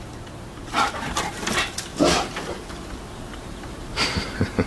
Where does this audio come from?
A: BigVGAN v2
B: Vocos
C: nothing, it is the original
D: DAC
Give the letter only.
A